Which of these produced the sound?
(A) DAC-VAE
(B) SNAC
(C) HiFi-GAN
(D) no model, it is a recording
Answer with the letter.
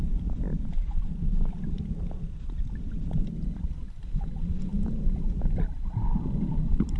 D